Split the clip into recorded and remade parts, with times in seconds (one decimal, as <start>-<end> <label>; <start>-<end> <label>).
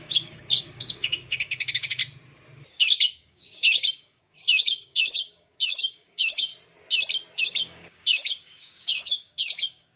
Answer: 0.0-2.0 remade; 2.0-2.7 recorded; 2.7-6.5 remade; 6.5-7.4 recorded; 7.4-10.0 remade